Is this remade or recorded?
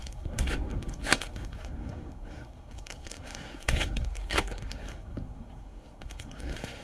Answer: remade